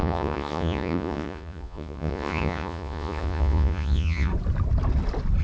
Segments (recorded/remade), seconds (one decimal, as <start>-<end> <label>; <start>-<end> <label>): 0.0-4.3 remade; 4.3-5.4 recorded